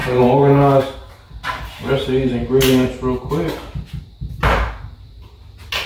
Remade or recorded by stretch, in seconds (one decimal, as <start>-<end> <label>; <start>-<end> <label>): 0.0-5.9 recorded